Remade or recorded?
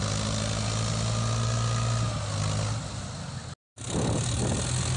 recorded